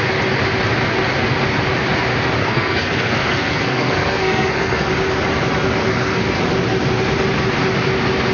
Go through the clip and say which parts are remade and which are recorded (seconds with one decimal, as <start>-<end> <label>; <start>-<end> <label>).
0.0-2.4 recorded; 2.4-4.9 remade; 4.9-5.8 recorded; 5.8-6.4 remade; 6.4-8.3 recorded